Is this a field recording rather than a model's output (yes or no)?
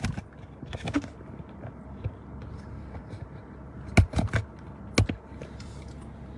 yes